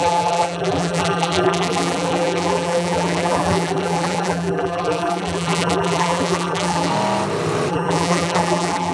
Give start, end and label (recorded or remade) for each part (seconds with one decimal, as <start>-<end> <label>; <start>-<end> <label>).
0.0-6.9 remade; 6.9-7.7 recorded; 7.7-8.9 remade